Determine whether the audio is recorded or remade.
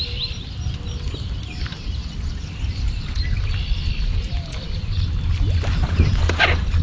recorded